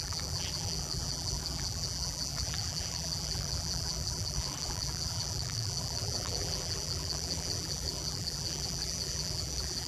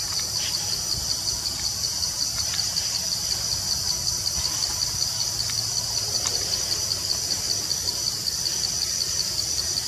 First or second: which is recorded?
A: second